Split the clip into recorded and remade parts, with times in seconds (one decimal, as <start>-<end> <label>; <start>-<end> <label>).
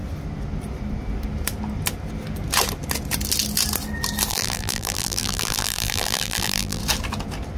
0.0-4.3 recorded; 4.3-6.8 remade; 6.8-7.6 recorded